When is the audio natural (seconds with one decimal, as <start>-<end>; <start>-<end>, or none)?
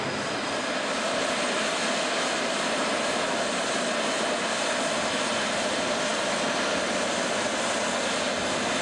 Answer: 0.0-8.8